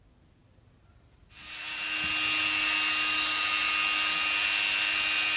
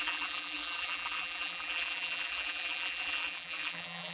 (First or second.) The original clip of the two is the first